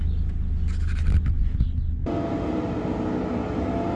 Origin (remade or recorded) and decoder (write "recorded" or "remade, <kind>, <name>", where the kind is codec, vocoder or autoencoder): recorded